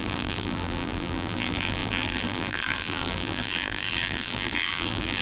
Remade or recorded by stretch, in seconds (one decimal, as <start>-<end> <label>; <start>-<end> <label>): 0.0-5.2 remade